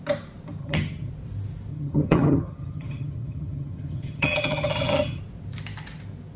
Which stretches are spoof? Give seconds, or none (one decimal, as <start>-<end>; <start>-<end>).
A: 0.6-1.1; 1.7-5.2